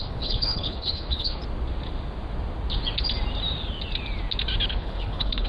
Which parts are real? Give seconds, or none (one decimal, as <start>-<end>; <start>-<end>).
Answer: 1.4-4.7